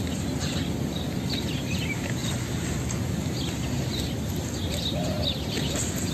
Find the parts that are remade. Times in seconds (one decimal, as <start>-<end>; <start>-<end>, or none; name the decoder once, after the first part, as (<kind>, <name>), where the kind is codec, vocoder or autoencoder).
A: none